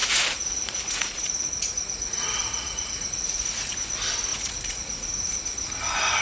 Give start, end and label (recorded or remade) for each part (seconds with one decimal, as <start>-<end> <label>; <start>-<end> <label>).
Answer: 0.0-3.7 remade; 3.7-4.3 recorded; 4.3-5.3 remade; 5.3-6.2 recorded